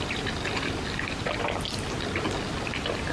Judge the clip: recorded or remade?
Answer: recorded